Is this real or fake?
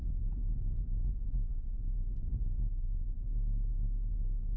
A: real